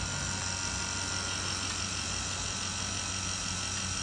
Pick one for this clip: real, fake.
real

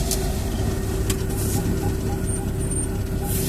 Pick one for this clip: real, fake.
real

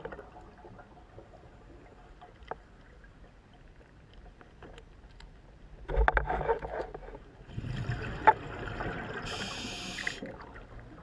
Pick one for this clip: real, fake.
real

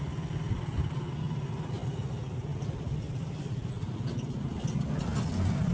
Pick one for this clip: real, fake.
real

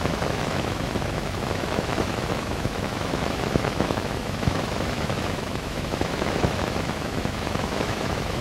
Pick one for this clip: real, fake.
fake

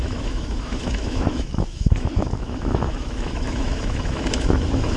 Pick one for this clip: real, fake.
fake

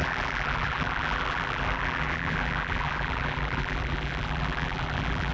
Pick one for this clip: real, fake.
fake